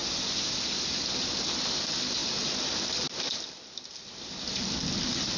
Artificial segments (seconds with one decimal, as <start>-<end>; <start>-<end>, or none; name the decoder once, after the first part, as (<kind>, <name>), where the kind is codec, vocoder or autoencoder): none